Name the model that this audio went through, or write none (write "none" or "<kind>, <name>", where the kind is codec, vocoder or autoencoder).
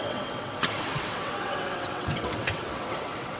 vocoder, WaveNeXt